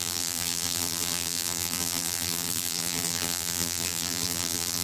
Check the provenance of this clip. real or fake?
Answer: fake